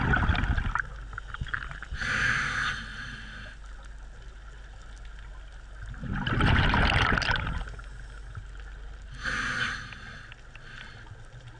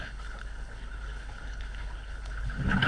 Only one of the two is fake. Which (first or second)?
second